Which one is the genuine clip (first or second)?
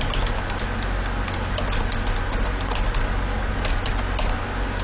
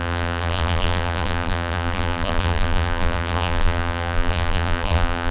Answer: first